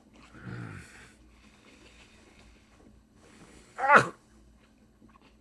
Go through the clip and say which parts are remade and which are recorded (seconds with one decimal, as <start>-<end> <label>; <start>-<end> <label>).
0.0-0.5 remade; 0.5-1.2 recorded; 1.2-5.4 remade